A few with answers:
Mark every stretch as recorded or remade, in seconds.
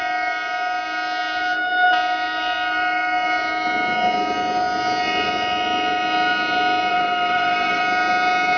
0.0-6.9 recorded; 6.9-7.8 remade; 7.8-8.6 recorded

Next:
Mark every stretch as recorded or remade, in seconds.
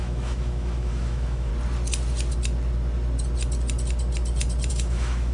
0.0-1.5 remade; 1.5-4.7 recorded; 4.7-5.3 remade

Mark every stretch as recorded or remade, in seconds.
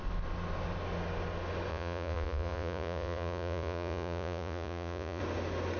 0.0-1.7 recorded; 1.7-5.2 remade; 5.2-5.8 recorded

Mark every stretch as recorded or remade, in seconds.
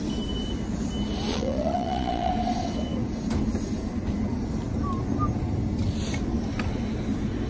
0.0-1.3 recorded; 1.3-2.3 remade; 2.3-7.5 recorded